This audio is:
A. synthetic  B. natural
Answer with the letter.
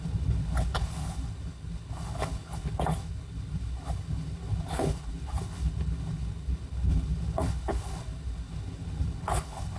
A